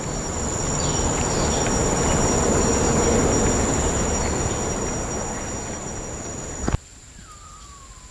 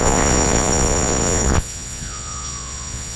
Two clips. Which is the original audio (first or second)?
first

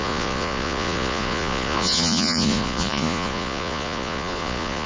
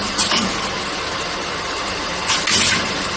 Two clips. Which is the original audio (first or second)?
second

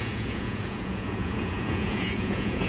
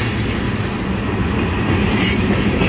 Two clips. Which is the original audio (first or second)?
second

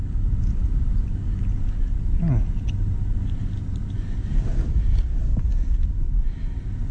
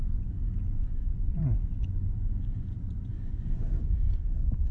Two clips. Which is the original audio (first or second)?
first